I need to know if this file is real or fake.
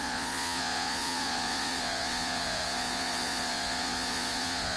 fake